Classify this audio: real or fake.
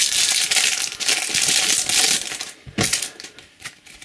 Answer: real